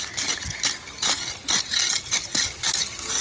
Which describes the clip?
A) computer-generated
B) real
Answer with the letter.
B